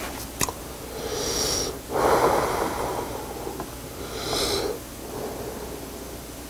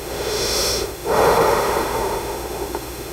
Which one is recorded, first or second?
first